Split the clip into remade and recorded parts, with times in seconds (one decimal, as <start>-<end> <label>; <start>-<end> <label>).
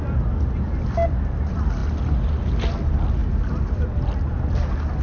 0.0-5.0 recorded